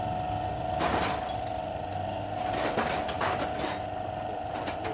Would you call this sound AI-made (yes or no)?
no